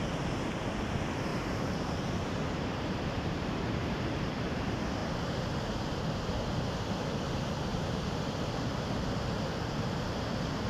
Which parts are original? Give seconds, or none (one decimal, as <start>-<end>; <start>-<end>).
0.0-1.3; 4.3-7.7; 8.3-10.7